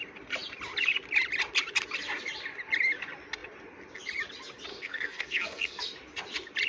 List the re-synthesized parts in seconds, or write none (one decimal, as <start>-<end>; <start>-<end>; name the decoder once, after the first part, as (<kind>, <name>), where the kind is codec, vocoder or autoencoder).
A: 4.7-5.8 (codec, SNAC)